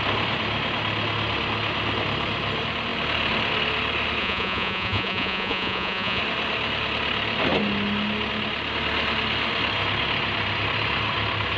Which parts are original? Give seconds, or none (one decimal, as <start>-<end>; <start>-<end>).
0.0-4.2; 6.2-11.6